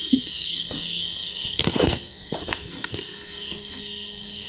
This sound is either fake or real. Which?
fake